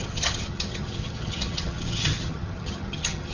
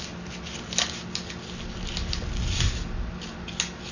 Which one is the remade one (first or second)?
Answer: first